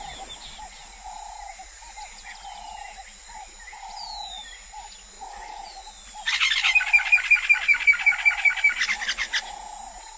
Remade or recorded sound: recorded